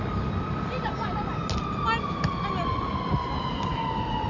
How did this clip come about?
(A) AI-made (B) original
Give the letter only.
B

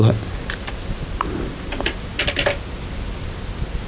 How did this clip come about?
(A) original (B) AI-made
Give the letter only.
A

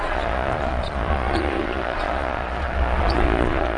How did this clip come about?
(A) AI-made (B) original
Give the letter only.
A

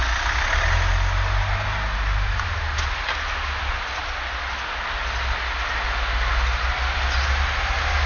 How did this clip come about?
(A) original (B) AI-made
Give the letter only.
A